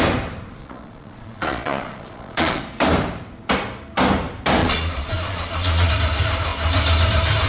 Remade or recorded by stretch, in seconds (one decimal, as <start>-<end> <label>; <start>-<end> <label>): 0.0-0.6 recorded; 0.6-2.6 remade; 2.6-4.6 recorded; 4.6-5.9 remade; 5.9-7.5 recorded

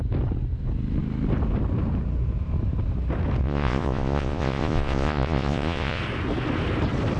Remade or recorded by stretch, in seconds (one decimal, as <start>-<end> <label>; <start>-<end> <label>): 0.0-3.4 recorded; 3.4-6.0 remade; 6.0-7.2 recorded

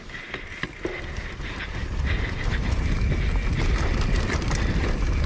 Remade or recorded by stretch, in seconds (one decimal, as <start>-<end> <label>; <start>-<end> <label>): 0.0-5.3 recorded

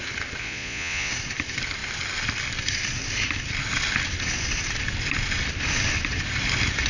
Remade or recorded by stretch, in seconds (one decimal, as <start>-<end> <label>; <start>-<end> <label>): 0.0-0.4 recorded; 0.4-1.1 remade; 1.1-6.9 recorded

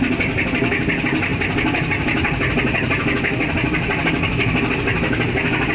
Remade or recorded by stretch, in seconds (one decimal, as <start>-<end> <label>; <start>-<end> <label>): 0.0-5.7 recorded

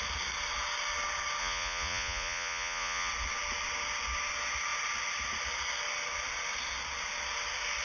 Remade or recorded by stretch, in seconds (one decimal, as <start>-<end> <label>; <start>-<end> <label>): 0.0-1.4 recorded; 1.4-3.1 remade; 3.1-7.8 recorded

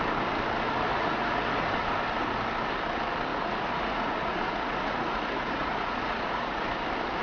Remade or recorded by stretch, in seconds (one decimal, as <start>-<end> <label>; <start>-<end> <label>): 0.0-0.9 recorded; 0.9-1.8 remade; 1.8-3.3 recorded; 3.3-6.8 remade; 6.8-7.2 recorded

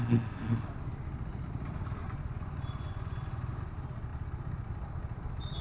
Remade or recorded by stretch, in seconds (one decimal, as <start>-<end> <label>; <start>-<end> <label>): 0.0-2.0 recorded; 2.0-3.6 remade; 3.6-5.6 recorded